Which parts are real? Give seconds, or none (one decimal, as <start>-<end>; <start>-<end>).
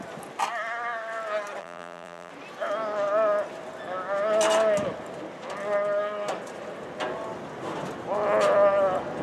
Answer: 0.0-1.6; 2.3-9.2